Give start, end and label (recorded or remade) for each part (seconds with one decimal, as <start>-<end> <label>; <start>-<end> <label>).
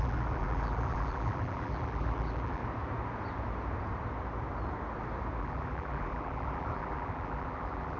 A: 0.0-2.6 remade; 2.6-5.4 recorded; 5.4-8.0 remade